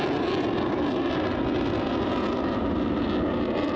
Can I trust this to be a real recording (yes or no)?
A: yes